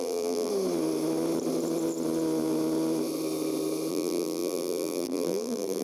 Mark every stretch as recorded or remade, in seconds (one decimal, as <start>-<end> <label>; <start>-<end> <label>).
0.0-0.5 remade; 0.5-3.9 recorded; 3.9-5.8 remade